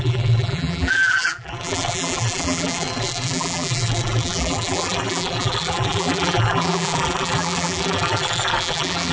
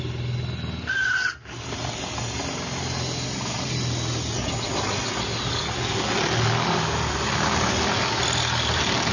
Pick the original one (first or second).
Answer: second